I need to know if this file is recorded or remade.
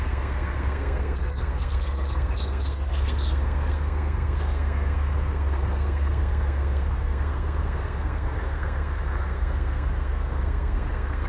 remade